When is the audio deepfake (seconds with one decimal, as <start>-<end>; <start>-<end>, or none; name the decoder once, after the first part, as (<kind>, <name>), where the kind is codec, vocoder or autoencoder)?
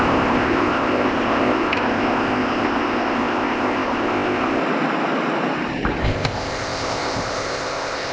0.0-4.6 (codec, ZipCodec); 6.0-8.1